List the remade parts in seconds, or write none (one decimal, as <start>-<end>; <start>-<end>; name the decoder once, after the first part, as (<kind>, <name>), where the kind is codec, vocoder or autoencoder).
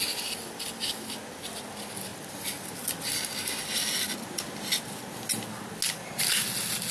none